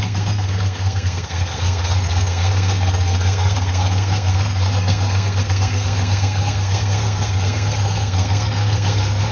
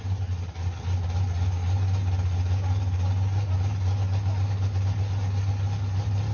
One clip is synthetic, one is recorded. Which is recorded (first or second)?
second